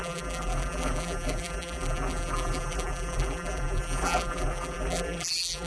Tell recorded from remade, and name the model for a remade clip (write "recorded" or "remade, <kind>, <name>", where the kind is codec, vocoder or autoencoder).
remade, vocoder, BigVGAN v2